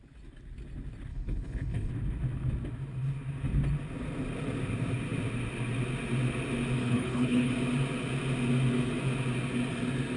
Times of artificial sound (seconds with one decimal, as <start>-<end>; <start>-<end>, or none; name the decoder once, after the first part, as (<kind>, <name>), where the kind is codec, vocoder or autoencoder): 1.1-1.9 (codec, HILCodec); 6.8-7.5